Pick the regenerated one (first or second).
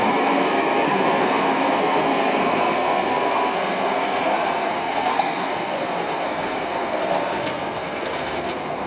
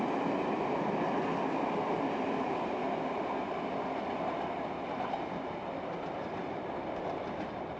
first